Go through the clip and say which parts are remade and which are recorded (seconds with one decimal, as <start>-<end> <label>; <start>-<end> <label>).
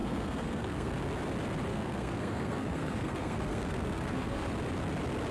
0.0-0.9 remade; 0.9-1.7 recorded; 1.7-4.5 remade; 4.5-5.3 recorded